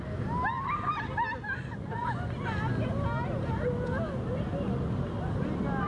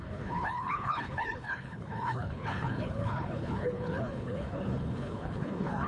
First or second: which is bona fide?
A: first